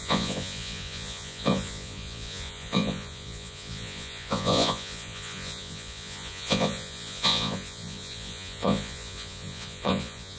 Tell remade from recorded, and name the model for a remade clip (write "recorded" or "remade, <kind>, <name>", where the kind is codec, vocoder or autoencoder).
remade, vocoder, Vocos